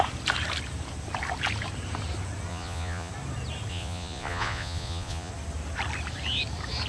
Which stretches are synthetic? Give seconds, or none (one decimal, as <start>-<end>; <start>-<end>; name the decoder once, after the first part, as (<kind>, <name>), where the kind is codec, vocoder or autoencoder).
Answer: 2.5-3.1 (vocoder, Vocos); 3.7-5.3